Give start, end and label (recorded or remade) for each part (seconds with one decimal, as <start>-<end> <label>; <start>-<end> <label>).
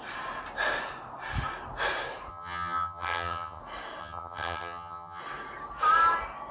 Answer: 0.0-2.3 recorded; 2.3-3.6 remade; 3.6-4.0 recorded; 4.0-5.2 remade; 5.2-6.5 recorded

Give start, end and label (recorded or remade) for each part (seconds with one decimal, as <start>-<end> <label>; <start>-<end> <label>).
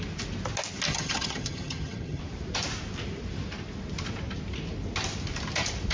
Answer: 0.0-0.9 recorded; 0.9-2.2 remade; 2.2-5.9 recorded